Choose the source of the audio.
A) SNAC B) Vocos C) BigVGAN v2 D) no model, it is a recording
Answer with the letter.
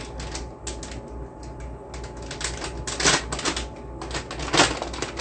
D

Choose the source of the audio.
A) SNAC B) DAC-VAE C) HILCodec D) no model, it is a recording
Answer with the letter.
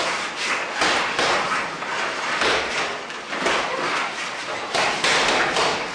D